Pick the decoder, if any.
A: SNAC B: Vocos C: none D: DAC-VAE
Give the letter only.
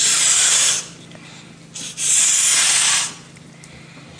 C